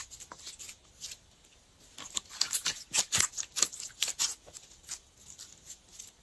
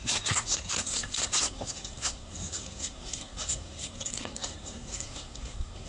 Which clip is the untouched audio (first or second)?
first